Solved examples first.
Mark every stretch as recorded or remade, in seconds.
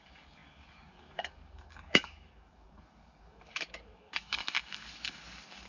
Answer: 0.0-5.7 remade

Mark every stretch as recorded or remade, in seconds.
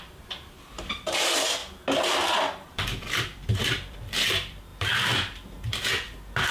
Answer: 0.0-1.6 remade; 1.6-2.3 recorded; 2.3-6.5 remade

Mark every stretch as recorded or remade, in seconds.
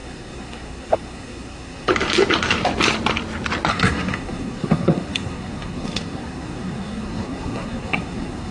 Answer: 0.0-1.9 remade; 1.9-3.7 recorded; 3.7-8.5 remade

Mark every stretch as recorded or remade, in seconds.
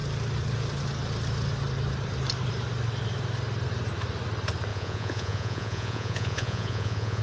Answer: 0.0-4.7 recorded; 4.7-7.2 remade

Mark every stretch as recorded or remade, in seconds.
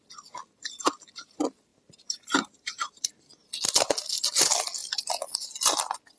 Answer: 0.0-1.7 recorded; 1.7-2.9 remade; 2.9-6.2 recorded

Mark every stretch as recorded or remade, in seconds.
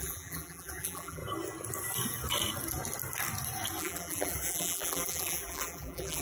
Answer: 0.0-1.2 remade; 1.2-3.8 recorded; 3.8-6.2 remade